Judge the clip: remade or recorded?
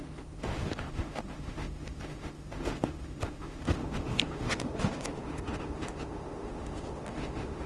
remade